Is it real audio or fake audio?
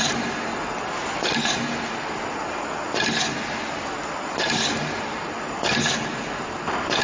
real